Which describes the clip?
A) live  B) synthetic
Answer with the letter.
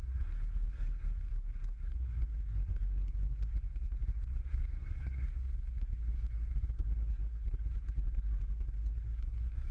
B